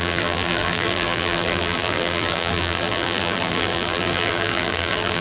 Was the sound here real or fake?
fake